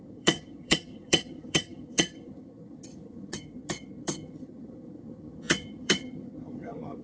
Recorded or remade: remade